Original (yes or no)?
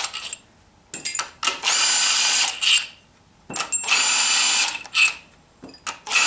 yes